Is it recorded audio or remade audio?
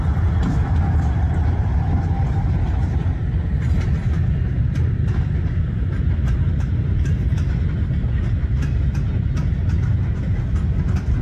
recorded